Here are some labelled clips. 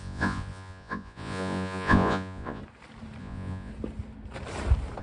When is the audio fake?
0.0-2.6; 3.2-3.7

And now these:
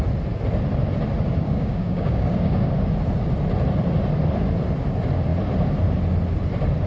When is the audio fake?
1.4-2.7

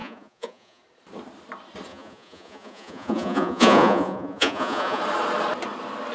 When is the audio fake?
0.0-0.8; 1.9-5.0